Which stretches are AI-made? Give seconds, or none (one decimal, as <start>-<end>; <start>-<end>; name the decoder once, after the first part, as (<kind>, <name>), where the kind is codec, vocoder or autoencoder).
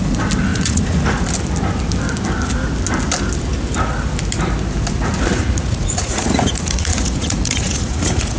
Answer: 0.5-1.2 (vocoder, Vocos); 5.3-8.4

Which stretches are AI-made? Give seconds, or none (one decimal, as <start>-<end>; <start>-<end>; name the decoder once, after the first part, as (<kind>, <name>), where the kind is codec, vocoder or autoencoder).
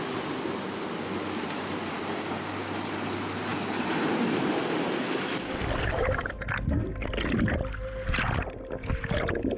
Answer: none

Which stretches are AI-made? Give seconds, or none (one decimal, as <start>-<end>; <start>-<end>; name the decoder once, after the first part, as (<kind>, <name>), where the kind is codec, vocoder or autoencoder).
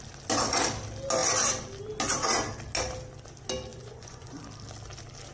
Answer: 3.7-4.4 (vocoder, Vocos)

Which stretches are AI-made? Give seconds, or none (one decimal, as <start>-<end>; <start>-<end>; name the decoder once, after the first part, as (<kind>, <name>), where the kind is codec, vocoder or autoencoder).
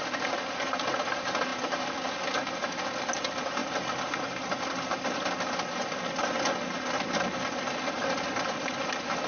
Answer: none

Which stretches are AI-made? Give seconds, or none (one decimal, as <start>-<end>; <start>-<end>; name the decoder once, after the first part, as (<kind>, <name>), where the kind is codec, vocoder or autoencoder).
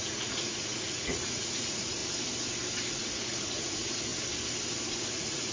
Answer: 0.0-2.0 (vocoder, Vocos); 2.9-4.1; 5.1-5.5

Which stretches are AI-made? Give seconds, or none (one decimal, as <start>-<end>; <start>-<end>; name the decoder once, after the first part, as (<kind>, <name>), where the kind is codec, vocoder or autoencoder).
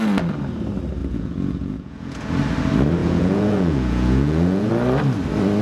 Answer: 1.0-2.3 (vocoder, Vocos); 3.0-4.7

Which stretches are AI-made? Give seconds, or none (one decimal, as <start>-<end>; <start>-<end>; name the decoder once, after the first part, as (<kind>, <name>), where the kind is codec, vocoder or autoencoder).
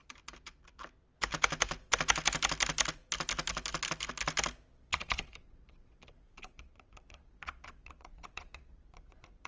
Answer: 4.9-9.5 (vocoder, Vocos)